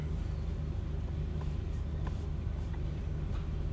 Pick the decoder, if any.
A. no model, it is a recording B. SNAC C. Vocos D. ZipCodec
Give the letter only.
A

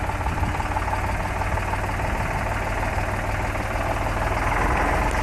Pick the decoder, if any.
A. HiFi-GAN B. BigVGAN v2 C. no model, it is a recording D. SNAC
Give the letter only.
C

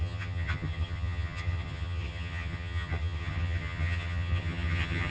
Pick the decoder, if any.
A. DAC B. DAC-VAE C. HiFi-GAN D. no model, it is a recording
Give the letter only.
C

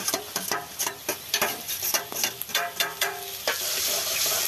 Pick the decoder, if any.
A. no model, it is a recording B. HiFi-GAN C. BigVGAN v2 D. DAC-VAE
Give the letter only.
A